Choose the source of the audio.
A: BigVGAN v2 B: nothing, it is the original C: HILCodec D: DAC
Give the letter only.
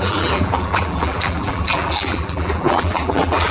A